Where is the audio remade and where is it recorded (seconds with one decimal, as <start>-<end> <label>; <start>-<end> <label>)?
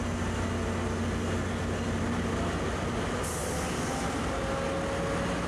0.0-5.5 recorded